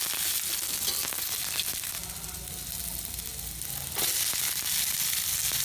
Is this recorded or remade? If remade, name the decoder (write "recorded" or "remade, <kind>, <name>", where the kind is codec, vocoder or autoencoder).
recorded